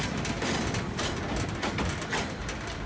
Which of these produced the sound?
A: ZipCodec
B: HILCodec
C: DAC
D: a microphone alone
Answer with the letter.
D